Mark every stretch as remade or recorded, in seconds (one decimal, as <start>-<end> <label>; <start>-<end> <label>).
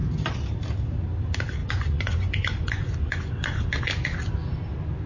0.0-1.6 recorded; 1.6-3.3 remade; 3.3-5.1 recorded